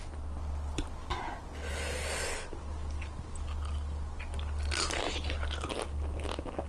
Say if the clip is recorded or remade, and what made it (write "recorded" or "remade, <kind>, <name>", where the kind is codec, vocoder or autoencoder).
recorded